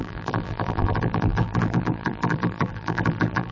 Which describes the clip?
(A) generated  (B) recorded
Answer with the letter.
A